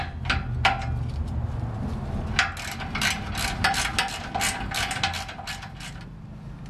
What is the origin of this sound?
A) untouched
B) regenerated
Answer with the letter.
A